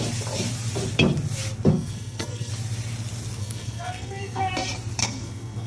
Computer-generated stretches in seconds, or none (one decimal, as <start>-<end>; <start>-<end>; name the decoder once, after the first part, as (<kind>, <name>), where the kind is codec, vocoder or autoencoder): 1.7-2.5 (codec, SNAC); 3.4-4.5; 5.0-5.7